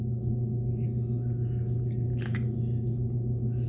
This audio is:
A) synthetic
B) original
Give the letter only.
B